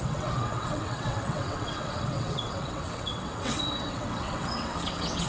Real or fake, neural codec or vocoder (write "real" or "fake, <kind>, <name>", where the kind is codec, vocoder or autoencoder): fake, vocoder, WaveNeXt